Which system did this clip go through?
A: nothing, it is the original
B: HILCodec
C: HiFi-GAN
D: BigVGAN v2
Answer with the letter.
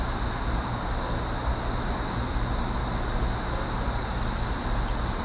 A